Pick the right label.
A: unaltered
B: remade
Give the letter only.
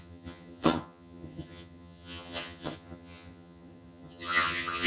B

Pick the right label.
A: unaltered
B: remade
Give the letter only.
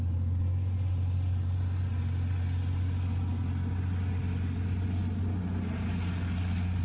A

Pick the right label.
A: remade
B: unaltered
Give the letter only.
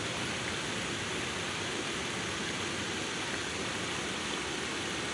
B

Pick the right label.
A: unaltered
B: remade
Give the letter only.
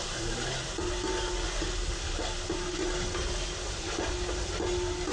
A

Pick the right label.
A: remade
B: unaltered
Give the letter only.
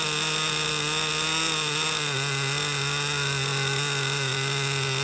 B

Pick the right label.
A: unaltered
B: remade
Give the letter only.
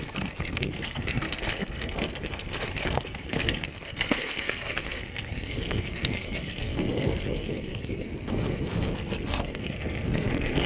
B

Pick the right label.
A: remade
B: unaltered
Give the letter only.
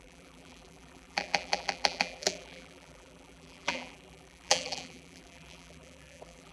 A